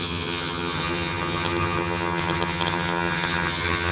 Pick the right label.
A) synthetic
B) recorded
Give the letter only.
A